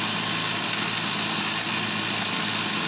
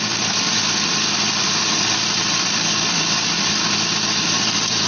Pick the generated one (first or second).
second